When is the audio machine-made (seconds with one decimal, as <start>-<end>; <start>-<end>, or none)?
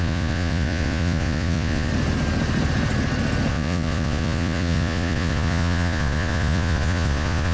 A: 0.0-1.9; 3.5-7.5